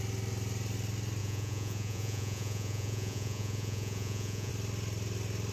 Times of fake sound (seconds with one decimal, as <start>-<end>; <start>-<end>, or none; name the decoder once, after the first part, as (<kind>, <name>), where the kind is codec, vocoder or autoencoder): 1.2-4.5 (vocoder, Vocos)